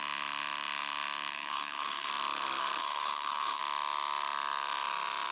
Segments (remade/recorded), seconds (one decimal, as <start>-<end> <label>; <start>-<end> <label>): 0.0-1.3 recorded; 1.3-2.1 remade; 2.1-2.8 recorded; 2.8-3.6 remade; 3.6-5.3 recorded